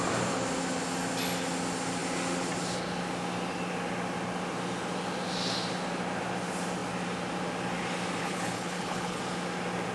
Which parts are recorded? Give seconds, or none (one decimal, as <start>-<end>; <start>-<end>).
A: 0.0-8.2; 9.2-9.9